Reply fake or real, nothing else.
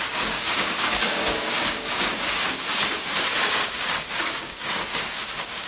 fake